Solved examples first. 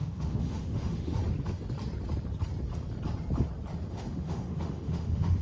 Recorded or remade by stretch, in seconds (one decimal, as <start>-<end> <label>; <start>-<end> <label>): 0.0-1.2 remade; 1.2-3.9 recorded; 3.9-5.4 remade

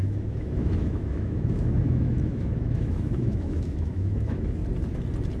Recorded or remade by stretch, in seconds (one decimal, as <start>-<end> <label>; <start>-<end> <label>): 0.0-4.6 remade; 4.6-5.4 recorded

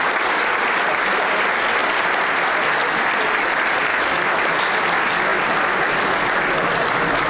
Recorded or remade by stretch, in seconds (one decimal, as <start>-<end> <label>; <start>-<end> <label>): 0.0-3.9 recorded; 3.9-4.4 remade; 4.4-7.3 recorded

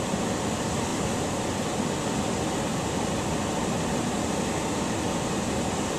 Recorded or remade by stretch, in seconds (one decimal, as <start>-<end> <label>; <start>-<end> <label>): 0.0-6.0 recorded

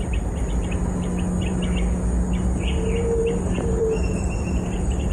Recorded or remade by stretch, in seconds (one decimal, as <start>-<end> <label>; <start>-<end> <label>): 0.0-5.1 recorded

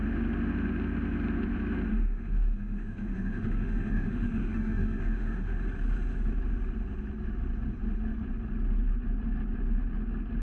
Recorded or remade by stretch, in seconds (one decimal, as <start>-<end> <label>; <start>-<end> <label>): 0.0-1.9 recorded; 1.9-5.6 remade; 5.6-10.4 recorded

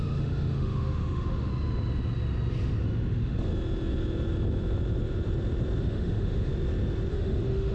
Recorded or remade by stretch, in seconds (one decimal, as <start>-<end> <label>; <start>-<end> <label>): 0.0-1.5 remade; 1.5-2.8 recorded; 2.8-3.5 remade; 3.5-5.8 recorded; 5.8-6.5 remade; 6.5-7.1 recorded; 7.1-7.7 remade

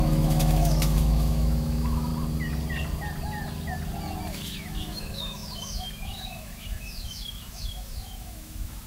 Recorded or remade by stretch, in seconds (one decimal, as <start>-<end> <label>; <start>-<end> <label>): 0.0-2.1 remade; 2.1-4.3 recorded; 4.3-8.9 remade